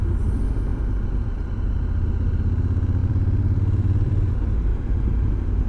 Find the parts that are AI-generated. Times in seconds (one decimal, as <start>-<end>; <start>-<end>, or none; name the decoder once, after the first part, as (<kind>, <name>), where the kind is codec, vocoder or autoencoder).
0.7-1.3 (vocoder, BigVGAN v2); 3.0-4.3; 4.7-5.3